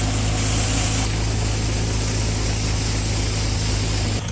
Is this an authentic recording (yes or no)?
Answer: yes